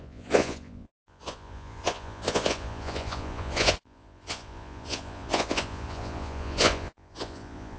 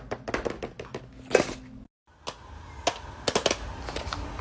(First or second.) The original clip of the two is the second